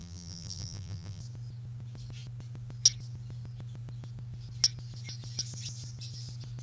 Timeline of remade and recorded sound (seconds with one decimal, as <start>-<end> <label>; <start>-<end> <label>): 0.0-1.2 remade; 1.2-6.6 recorded